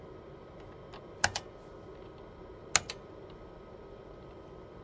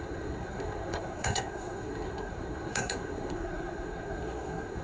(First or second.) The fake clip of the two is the second